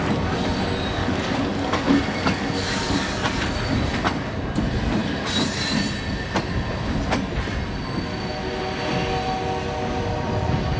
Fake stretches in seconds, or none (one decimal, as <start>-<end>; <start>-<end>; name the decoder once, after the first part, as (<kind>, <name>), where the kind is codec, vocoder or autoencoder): 1.0-3.1 (codec, DAC)